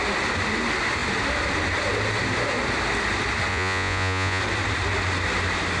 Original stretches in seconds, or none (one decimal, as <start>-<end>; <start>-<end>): 0.0-3.5; 4.4-5.8